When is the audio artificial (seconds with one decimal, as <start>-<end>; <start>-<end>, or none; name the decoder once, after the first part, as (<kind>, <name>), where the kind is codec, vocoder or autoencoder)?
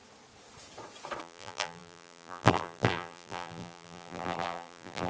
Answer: 1.2-5.1 (vocoder, BigVGAN v2)